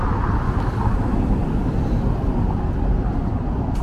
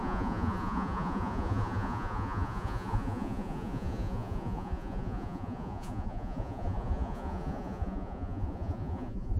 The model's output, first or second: second